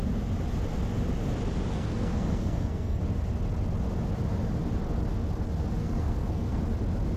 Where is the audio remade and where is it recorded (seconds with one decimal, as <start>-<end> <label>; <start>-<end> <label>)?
0.0-1.7 recorded; 1.7-3.0 remade; 3.0-5.8 recorded; 5.8-6.6 remade; 6.6-7.2 recorded